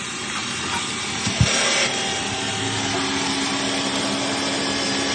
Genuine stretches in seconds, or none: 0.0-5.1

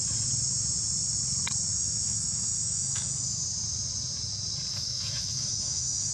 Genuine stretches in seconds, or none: 0.0-1.7; 3.1-4.7